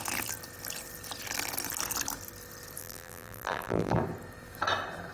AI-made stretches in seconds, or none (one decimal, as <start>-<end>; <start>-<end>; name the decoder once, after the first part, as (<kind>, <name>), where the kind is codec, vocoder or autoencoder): 2.8-4.0 (vocoder, BigVGAN v2)